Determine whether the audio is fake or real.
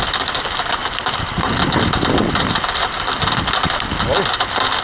real